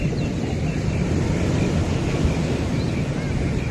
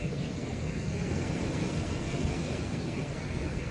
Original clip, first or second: first